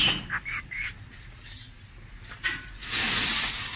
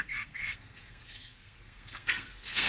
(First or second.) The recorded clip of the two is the first